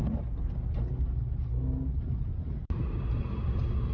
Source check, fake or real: real